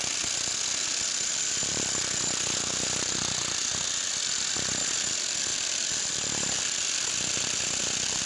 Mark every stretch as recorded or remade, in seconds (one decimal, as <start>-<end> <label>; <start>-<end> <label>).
0.0-8.3 recorded